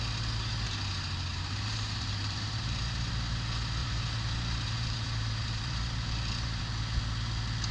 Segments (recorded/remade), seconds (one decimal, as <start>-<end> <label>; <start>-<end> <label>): 0.0-1.3 recorded; 1.3-3.1 remade; 3.1-3.8 recorded; 3.8-6.6 remade; 6.6-7.7 recorded